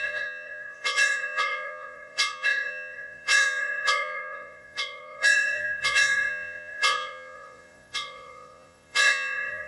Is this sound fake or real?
fake